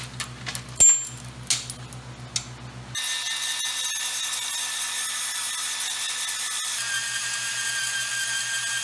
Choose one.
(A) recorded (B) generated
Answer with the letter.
A